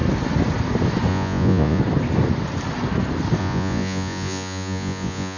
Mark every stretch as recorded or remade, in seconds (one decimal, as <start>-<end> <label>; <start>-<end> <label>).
0.0-1.1 recorded; 1.1-1.8 remade; 1.8-3.4 recorded; 3.4-5.4 remade